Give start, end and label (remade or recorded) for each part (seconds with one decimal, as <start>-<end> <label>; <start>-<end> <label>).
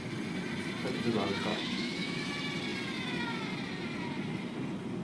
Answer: 0.0-1.5 recorded; 1.5-2.3 remade; 2.3-5.0 recorded